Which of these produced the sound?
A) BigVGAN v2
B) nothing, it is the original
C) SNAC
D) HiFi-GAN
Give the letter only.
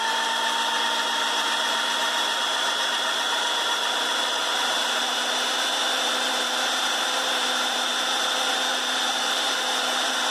A